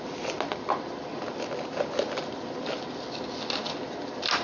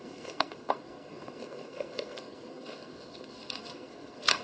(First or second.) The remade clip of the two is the second